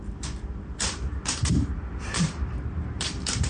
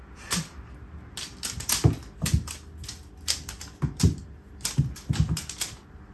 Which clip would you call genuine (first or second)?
second